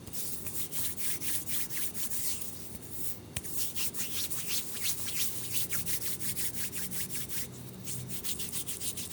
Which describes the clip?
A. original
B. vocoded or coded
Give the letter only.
A